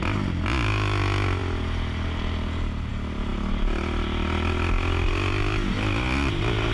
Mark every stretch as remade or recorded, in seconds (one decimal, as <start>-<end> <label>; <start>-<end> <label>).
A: 0.0-6.7 recorded